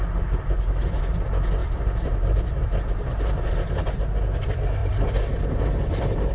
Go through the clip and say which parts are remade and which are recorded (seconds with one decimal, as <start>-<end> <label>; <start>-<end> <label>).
0.0-1.6 recorded; 1.6-3.6 remade; 3.6-6.3 recorded